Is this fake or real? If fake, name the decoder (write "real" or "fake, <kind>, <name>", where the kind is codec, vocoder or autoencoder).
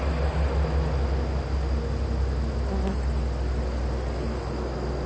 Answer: real